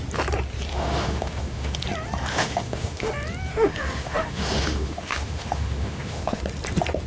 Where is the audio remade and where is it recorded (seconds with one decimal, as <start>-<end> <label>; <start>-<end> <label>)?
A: 0.0-0.7 recorded; 0.7-1.8 remade; 1.8-2.3 recorded; 2.3-3.1 remade; 3.1-3.5 recorded; 3.5-6.4 remade; 6.4-7.1 recorded